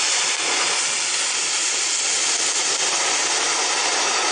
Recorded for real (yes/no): yes